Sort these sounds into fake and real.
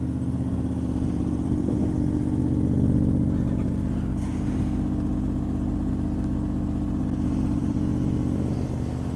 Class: real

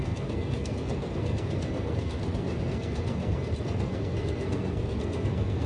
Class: fake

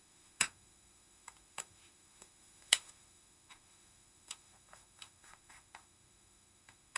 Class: fake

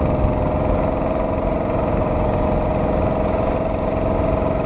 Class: real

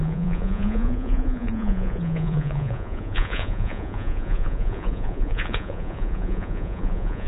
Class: fake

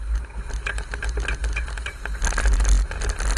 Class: real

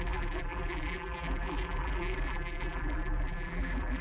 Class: fake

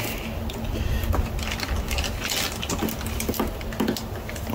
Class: real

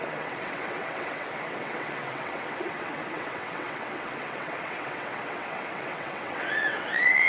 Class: fake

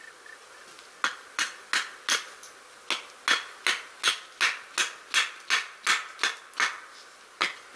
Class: real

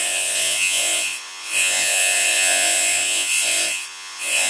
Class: fake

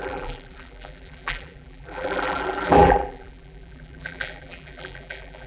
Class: fake